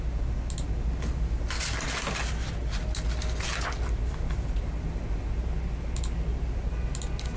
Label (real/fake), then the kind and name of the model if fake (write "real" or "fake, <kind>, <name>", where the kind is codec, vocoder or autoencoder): real